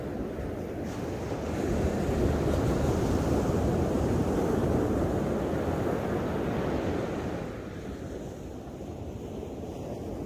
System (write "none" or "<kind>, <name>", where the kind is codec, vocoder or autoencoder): none